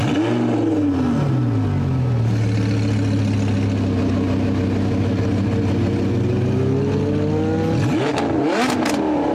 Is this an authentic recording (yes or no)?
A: yes